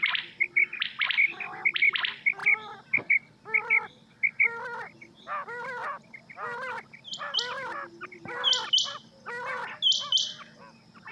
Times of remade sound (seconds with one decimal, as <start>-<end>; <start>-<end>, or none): none